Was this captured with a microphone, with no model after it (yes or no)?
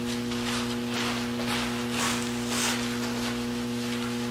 yes